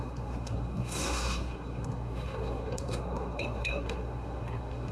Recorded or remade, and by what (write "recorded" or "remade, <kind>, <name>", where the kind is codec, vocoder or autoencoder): remade, codec, SNAC